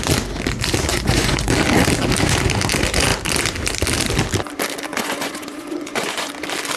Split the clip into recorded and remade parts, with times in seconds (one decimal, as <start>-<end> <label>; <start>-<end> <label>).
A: 0.0-0.9 recorded; 0.9-1.5 remade; 1.5-4.9 recorded; 4.9-6.3 remade; 6.3-6.8 recorded

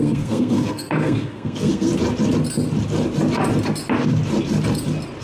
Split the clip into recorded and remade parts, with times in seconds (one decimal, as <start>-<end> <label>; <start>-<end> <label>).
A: 0.0-1.9 remade; 1.9-5.2 recorded

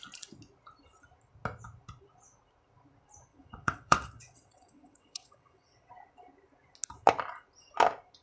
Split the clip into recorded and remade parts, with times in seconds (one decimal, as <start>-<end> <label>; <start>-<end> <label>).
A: 0.0-3.3 recorded; 3.3-5.9 remade; 5.9-8.2 recorded

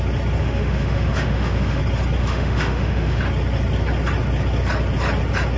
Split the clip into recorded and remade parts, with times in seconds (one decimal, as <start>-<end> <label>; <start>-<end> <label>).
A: 0.0-0.4 recorded; 0.4-1.8 remade; 1.8-2.2 recorded; 2.2-3.2 remade; 3.2-5.6 recorded

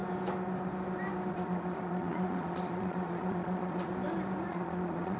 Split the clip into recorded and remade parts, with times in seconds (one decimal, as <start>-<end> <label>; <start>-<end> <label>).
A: 0.0-1.3 recorded; 1.3-3.9 remade; 3.9-4.5 recorded; 4.5-5.2 remade

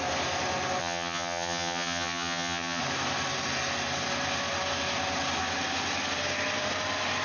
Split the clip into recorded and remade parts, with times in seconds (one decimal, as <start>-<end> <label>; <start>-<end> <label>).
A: 0.0-0.8 recorded; 0.8-2.8 remade; 2.8-7.2 recorded